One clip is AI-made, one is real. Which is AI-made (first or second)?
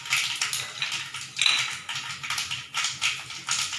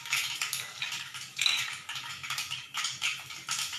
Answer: second